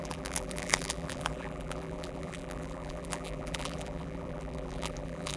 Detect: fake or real fake